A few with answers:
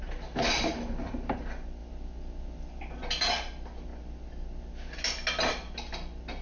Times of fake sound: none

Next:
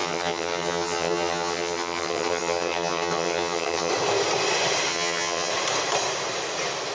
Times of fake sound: 0.0-3.9 (vocoder, HiFi-GAN); 4.9-5.5

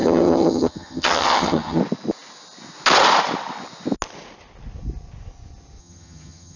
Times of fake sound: 0.0-1.8 (vocoder, HiFi-GAN); 5.8-6.6

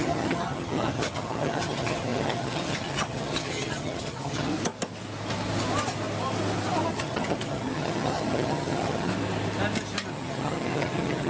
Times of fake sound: 0.0-4.5 (vocoder, HiFi-GAN); 6.9-9.1; 10.1-11.3

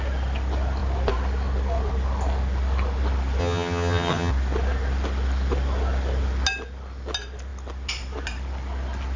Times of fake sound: 3.4-4.3 (vocoder, HiFi-GAN)

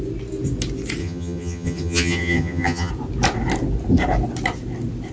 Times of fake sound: 1.0-2.9 (vocoder, HiFi-GAN)

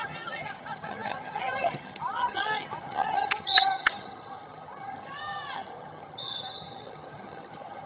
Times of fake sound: 0.0-7.9 (vocoder, HiFi-GAN)

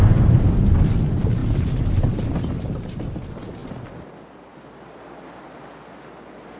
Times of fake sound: none